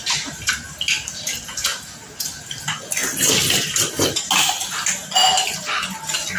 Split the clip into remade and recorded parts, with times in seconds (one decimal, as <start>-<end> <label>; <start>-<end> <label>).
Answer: 0.0-6.4 recorded